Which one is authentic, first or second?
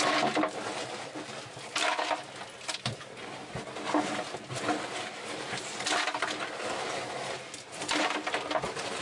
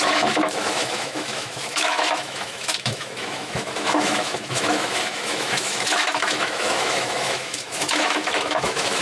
first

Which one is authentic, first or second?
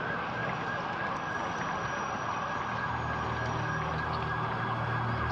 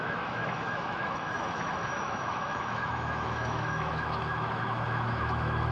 first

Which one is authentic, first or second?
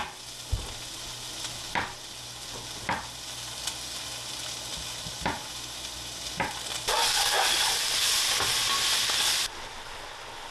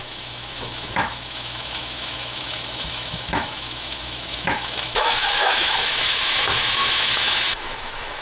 first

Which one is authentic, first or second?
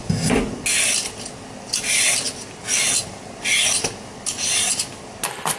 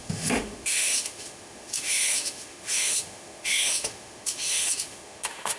first